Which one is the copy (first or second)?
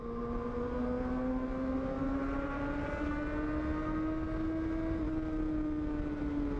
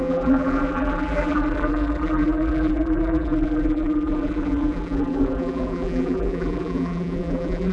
second